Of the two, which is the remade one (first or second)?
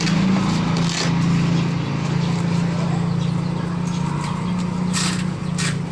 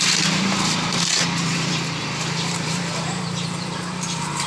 second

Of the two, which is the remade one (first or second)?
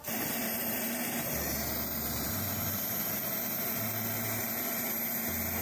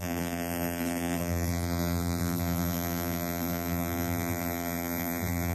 second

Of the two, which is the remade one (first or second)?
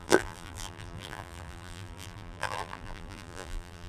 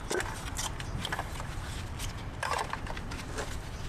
first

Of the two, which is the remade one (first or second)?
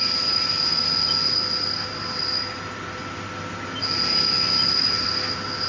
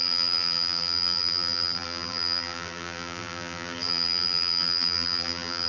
second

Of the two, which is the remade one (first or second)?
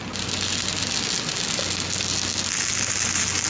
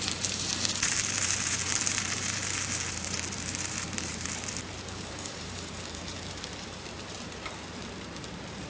second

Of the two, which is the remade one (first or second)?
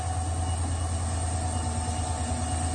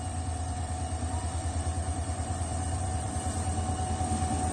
second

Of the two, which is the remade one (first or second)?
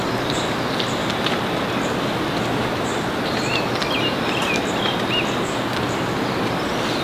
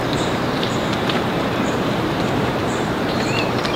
second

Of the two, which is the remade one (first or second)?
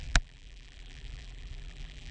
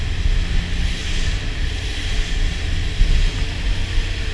first